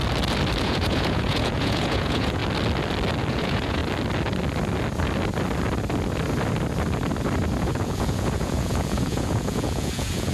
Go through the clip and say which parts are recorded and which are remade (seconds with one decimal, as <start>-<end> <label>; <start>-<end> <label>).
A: 0.0-0.6 recorded; 0.6-2.4 remade; 2.4-3.3 recorded; 3.3-3.8 remade; 3.8-7.6 recorded; 7.6-10.3 remade